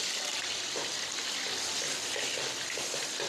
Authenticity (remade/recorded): remade